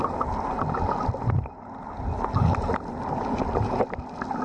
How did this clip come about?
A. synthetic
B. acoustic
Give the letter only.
B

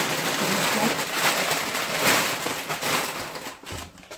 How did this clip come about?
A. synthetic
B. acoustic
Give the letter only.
B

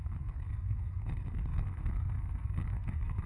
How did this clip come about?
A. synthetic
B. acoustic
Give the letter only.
A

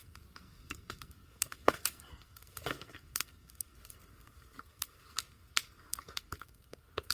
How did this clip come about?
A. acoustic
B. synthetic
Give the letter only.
B